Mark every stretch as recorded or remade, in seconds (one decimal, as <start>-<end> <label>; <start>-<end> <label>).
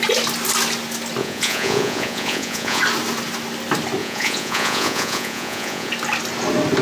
0.0-1.2 recorded; 1.2-2.8 remade; 2.8-4.0 recorded; 4.0-5.9 remade; 5.9-6.8 recorded